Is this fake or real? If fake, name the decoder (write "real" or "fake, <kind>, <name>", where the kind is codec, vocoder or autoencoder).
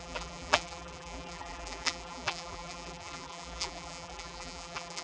fake, vocoder, BigVGAN v2